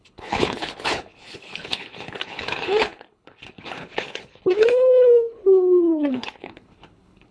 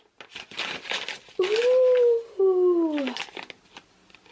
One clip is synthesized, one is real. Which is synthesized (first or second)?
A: first